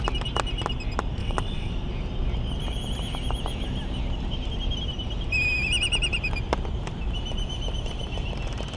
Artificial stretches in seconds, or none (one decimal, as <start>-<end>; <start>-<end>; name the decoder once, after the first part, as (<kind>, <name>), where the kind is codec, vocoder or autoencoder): 1.2-1.7 (vocoder, WaveNeXt)